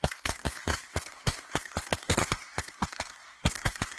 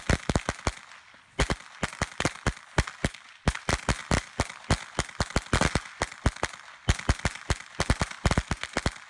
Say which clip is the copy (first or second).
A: first